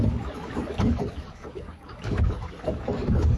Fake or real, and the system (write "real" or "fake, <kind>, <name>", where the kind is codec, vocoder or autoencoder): fake, codec, DAC